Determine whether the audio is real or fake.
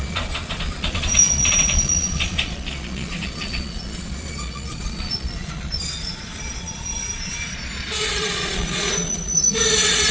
fake